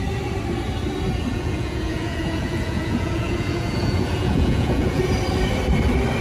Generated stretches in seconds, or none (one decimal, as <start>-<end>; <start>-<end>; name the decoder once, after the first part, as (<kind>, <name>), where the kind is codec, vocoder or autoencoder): 1.3-5.0 (vocoder, Vocos)